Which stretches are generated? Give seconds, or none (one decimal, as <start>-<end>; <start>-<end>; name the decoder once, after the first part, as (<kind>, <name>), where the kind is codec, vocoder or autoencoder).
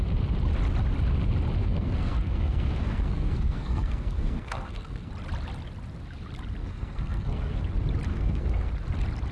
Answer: 1.6-5.1 (codec, SNAC); 6.6-7.6; 8.1-8.7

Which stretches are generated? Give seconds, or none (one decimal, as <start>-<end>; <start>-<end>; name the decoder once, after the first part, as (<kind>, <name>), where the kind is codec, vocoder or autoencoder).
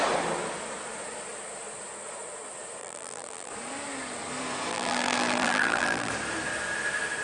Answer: 2.8-3.5 (vocoder, BigVGAN v2); 4.7-6.1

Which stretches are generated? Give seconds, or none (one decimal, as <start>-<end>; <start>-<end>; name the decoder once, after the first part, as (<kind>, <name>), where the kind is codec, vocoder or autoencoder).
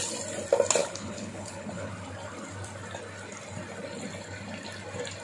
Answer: 0.8-1.9 (codec, HILCodec)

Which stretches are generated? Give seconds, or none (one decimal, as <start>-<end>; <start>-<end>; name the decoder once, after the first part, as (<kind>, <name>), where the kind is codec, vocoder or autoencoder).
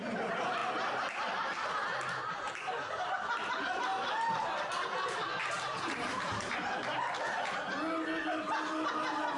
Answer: none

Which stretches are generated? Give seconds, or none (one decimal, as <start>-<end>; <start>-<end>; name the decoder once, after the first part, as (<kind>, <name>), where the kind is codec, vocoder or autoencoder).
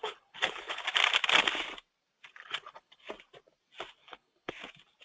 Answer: 0.0-0.8 (codec, HILCodec); 2.4-3.1; 4.0-4.5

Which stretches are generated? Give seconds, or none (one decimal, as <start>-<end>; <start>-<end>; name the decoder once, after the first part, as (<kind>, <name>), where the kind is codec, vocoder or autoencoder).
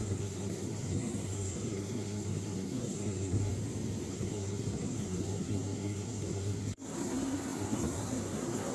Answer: 0.0-3.5 (codec, SNAC); 4.1-8.7